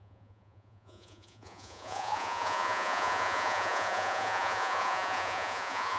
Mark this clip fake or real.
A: fake